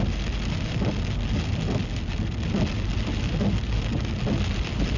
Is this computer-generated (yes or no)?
no